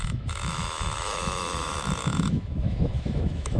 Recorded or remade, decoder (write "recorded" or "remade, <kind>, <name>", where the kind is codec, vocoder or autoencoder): remade, autoencoder, DAC-VAE